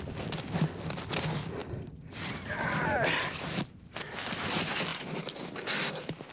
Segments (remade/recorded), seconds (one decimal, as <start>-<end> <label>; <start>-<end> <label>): 0.0-1.6 recorded; 1.6-4.5 remade; 4.5-6.3 recorded